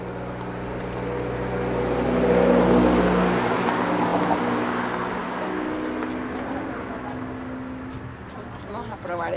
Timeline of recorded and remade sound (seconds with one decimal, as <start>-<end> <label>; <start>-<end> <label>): 0.0-9.4 recorded